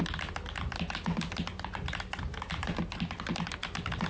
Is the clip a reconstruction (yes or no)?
no